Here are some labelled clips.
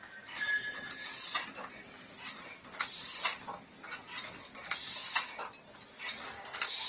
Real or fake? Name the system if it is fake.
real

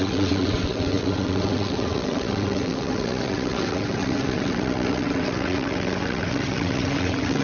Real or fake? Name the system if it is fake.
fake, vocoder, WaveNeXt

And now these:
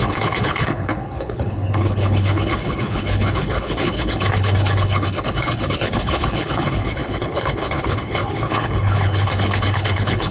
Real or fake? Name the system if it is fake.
fake, codec, HILCodec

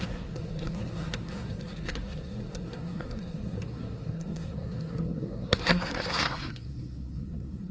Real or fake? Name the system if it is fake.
fake, codec, SNAC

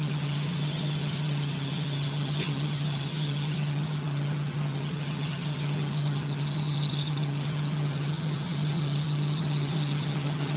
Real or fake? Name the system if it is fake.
fake, vocoder, HiFi-GAN